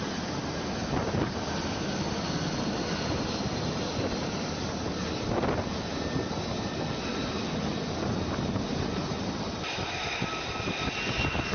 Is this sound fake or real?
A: real